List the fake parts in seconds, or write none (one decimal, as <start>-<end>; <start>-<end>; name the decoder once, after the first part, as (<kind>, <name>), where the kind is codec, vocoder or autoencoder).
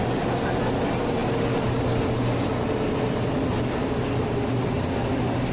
none